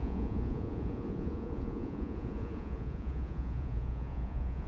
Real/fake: fake